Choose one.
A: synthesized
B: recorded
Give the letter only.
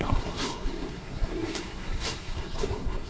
A